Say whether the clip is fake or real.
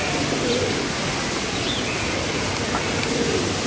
real